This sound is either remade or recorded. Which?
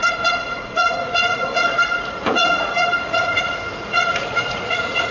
remade